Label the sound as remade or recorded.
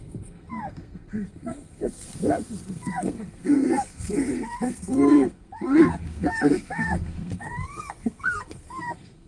remade